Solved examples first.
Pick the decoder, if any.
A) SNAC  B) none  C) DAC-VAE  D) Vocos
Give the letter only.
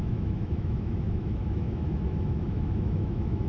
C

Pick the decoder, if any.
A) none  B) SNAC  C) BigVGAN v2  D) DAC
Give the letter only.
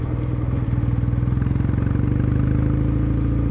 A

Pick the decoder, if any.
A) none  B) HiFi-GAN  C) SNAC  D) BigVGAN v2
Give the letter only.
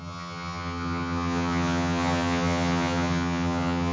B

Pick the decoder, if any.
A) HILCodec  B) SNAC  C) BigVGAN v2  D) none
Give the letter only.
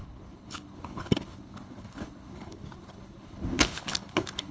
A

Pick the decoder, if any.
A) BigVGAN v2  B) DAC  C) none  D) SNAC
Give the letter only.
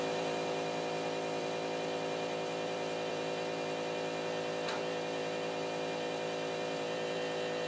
A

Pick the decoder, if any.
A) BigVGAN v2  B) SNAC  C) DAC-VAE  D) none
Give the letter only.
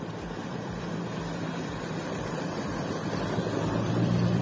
A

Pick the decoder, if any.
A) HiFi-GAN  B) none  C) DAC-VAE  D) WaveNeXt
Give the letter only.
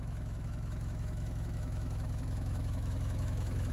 C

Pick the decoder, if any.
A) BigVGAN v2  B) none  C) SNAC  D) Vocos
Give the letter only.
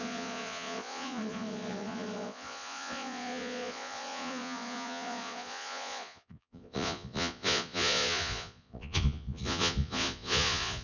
D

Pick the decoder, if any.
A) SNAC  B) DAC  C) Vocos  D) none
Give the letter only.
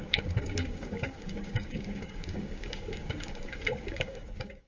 B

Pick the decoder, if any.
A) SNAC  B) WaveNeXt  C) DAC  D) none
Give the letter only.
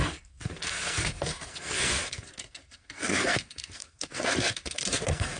A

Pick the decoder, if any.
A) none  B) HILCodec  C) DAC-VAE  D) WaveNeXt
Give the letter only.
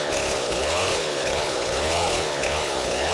B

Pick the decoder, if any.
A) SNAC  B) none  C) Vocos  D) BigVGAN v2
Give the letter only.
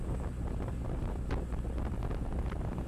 B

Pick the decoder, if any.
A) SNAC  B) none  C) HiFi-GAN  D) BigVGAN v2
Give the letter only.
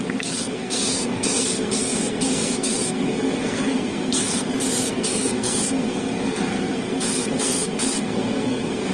A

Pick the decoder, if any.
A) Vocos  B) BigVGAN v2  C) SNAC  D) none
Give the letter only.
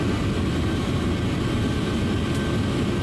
D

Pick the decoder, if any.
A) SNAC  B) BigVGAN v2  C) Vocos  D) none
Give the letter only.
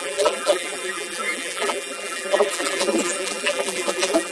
B